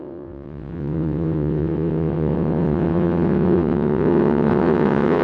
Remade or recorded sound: remade